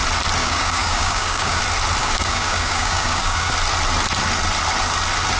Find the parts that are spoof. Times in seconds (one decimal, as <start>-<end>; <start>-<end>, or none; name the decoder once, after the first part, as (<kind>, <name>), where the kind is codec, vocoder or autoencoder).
0.4-1.6 (codec, DAC); 2.0-3.5